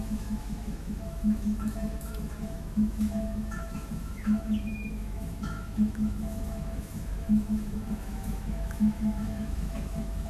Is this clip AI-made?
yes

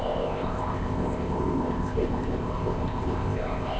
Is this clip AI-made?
yes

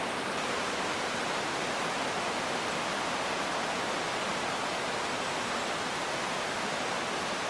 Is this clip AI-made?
no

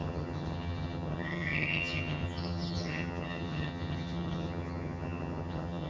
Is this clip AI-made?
yes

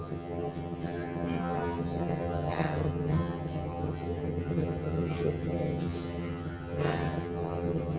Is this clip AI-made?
yes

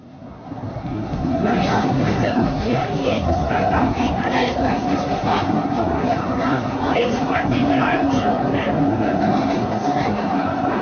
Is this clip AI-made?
yes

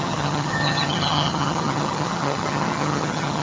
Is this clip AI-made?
yes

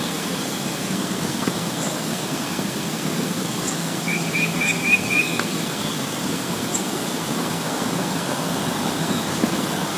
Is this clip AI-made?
yes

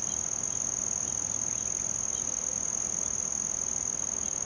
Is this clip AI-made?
no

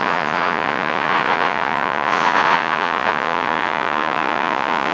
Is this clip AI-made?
yes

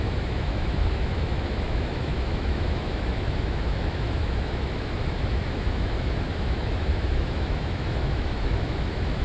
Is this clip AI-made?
yes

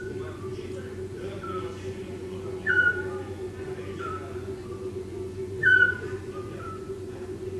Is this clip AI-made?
yes